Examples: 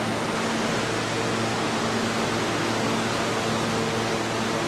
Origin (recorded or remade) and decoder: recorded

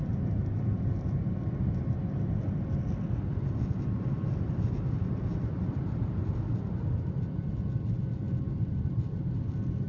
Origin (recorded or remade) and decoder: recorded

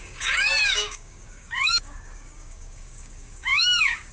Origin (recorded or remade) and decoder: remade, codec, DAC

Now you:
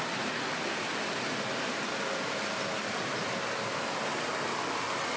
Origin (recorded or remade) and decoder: recorded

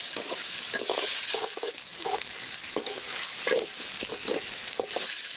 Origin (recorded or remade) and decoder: remade, codec, DAC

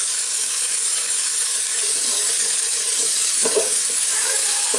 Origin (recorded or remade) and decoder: remade, codec, DAC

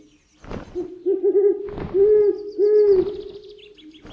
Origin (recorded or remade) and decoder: recorded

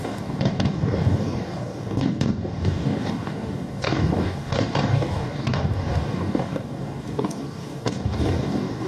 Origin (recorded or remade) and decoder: remade, codec, DAC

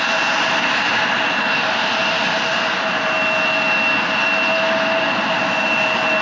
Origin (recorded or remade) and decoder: recorded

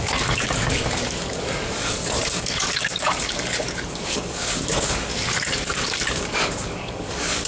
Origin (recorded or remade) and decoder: remade, codec, DAC